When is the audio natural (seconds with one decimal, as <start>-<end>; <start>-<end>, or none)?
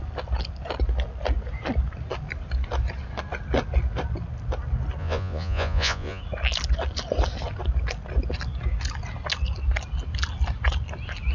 0.0-5.0; 6.2-11.3